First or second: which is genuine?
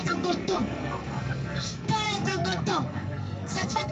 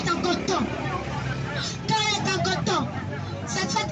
second